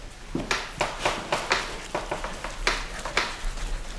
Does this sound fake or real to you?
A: real